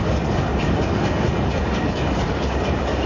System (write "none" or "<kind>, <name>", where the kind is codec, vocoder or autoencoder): codec, DAC